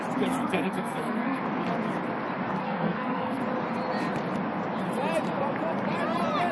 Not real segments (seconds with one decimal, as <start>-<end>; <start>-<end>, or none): 0.4-1.4; 2.6-3.4